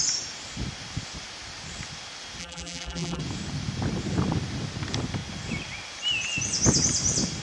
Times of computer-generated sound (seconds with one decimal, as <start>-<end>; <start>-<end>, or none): 2.4-3.2